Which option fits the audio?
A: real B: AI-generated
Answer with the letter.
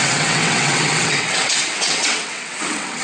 B